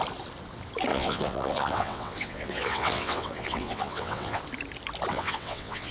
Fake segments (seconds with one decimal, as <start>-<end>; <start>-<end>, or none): 0.9-4.4; 5.1-5.9